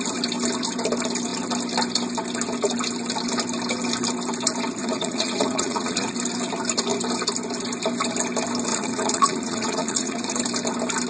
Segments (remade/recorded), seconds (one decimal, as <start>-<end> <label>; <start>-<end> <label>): 0.0-4.8 recorded; 4.8-6.1 remade; 6.1-8.7 recorded; 8.7-10.4 remade; 10.4-11.1 recorded